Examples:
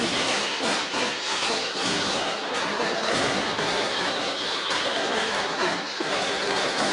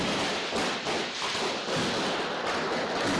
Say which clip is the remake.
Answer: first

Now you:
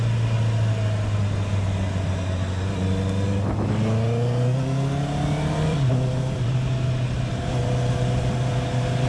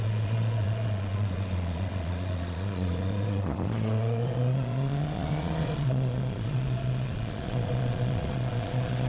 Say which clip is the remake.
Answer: second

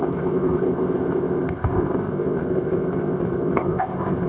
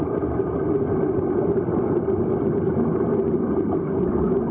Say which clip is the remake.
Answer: first